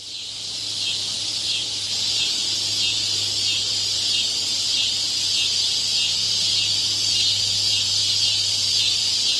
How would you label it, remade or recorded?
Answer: recorded